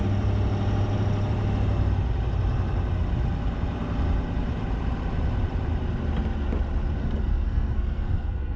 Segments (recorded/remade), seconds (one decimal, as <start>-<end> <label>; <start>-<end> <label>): 0.0-7.0 recorded; 7.0-8.6 remade